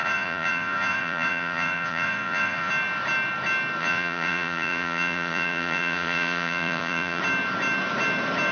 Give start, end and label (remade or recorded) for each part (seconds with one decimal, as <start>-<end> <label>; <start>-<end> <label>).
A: 0.0-2.7 remade; 2.7-3.8 recorded; 3.8-7.2 remade; 7.2-8.5 recorded

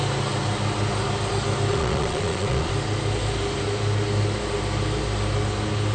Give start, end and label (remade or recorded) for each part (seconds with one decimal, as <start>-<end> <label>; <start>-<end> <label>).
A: 0.0-1.7 recorded; 1.7-2.7 remade; 2.7-5.9 recorded

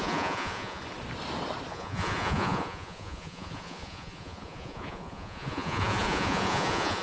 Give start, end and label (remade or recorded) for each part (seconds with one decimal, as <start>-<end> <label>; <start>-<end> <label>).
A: 0.0-0.8 remade; 0.8-1.7 recorded; 1.7-7.0 remade